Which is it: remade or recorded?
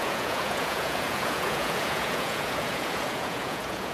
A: remade